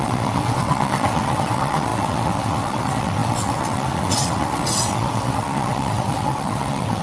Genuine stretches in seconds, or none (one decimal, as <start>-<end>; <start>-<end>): none